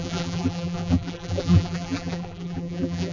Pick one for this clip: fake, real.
fake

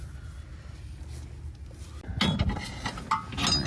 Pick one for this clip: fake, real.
real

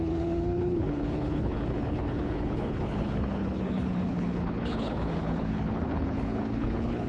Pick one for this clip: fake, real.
fake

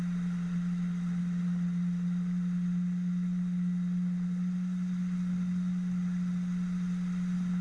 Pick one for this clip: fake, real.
real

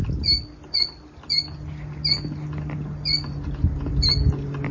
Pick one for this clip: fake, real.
real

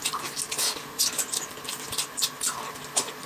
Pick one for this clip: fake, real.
real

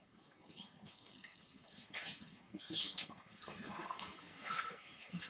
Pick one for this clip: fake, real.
fake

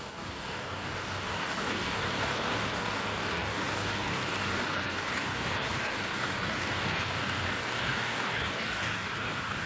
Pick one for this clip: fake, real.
fake